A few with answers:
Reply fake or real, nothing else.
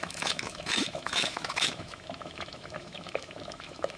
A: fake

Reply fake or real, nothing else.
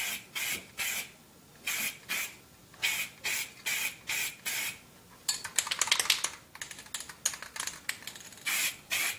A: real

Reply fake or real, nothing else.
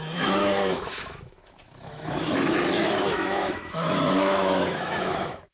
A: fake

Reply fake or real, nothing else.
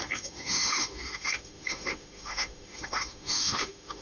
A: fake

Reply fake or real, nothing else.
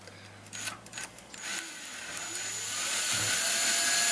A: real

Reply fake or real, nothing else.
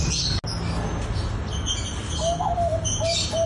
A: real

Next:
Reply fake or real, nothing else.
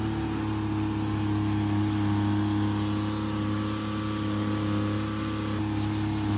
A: real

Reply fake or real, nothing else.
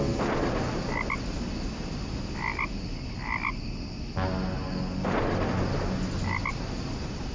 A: real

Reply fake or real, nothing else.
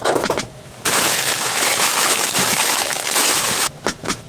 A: fake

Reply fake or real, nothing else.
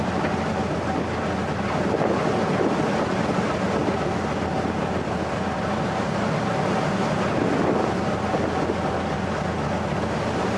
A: real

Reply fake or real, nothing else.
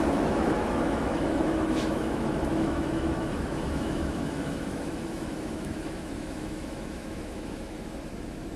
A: fake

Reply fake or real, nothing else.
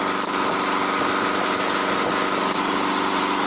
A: real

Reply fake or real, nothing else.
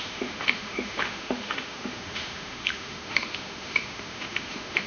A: fake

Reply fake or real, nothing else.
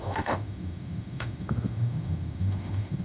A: fake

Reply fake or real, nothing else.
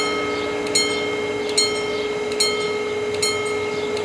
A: real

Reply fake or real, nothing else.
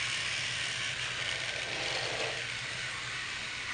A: real